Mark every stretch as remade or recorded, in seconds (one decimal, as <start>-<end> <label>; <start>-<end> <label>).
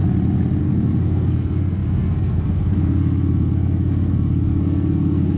0.0-0.6 recorded; 0.6-5.4 remade